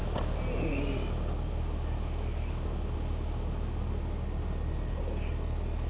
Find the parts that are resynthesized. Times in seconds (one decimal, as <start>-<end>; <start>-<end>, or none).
none